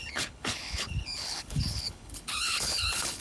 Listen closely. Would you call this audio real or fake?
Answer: fake